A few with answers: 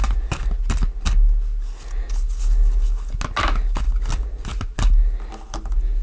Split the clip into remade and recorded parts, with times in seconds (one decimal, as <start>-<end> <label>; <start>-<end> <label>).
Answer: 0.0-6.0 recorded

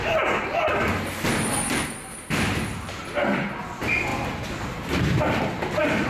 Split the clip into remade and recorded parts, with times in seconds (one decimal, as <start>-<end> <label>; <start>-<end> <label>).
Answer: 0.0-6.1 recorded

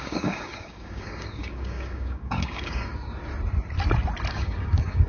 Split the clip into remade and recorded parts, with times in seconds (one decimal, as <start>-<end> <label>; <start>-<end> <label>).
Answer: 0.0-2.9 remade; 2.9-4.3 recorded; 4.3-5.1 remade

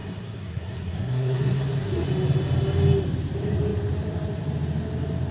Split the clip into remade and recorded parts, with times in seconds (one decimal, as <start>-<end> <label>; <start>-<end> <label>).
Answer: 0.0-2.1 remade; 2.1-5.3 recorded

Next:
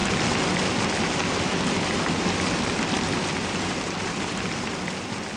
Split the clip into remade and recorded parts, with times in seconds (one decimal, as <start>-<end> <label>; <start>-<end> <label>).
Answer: 0.0-0.7 remade; 0.7-1.5 recorded; 1.5-4.7 remade; 4.7-5.4 recorded

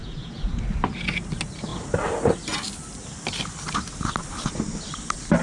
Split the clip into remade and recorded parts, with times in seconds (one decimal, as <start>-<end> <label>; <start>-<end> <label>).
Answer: 0.0-0.6 remade; 0.6-5.4 recorded